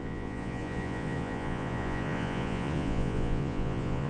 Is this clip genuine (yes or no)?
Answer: no